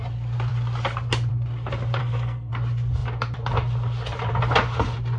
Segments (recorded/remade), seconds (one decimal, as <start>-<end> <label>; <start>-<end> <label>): 0.0-2.0 recorded; 2.0-2.5 remade; 2.5-5.2 recorded